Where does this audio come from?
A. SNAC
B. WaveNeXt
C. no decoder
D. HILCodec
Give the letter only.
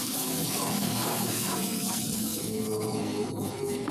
A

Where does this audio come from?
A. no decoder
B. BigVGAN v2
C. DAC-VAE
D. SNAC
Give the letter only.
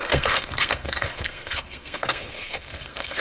D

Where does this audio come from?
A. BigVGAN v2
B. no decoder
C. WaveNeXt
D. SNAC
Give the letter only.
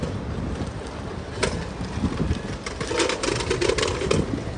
B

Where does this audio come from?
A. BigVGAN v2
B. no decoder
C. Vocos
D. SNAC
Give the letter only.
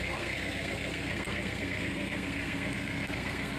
D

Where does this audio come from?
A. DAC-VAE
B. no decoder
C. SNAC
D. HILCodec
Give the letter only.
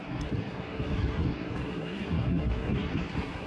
C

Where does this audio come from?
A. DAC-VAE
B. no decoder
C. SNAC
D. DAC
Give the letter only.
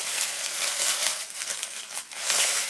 C